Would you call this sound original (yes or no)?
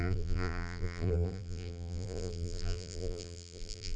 no